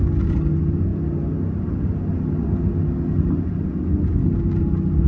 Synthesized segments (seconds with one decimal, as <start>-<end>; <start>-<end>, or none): none